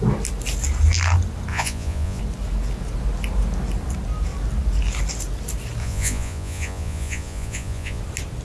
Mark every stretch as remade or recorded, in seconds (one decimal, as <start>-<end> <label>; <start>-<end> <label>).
0.0-1.5 recorded; 1.5-2.2 remade; 2.2-5.8 recorded; 5.8-8.0 remade; 8.0-8.4 recorded